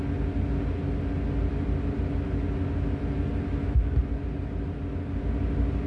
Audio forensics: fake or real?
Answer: real